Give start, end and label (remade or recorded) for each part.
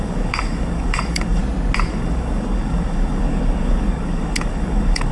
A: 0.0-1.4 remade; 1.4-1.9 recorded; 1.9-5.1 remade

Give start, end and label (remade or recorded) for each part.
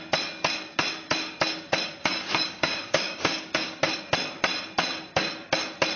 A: 0.0-2.0 recorded; 2.0-3.8 remade; 3.8-6.0 recorded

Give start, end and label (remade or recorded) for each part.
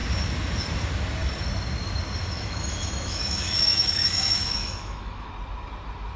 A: 0.0-2.2 recorded; 2.2-5.3 remade; 5.3-6.2 recorded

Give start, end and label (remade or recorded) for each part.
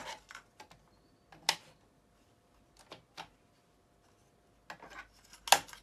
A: 0.0-5.8 recorded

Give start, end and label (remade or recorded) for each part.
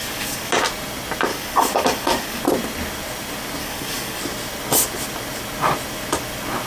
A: 0.0-0.5 remade; 0.5-1.3 recorded; 1.3-2.4 remade; 2.4-3.6 recorded; 3.6-4.2 remade; 4.2-6.7 recorded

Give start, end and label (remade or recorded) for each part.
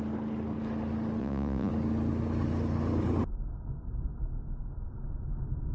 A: 0.0-1.2 recorded; 1.2-1.7 remade; 1.7-5.7 recorded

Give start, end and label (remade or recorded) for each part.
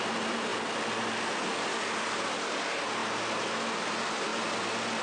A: 0.0-0.5 remade; 0.5-1.0 recorded; 1.0-3.0 remade; 3.0-3.8 recorded; 3.8-4.3 remade; 4.3-5.0 recorded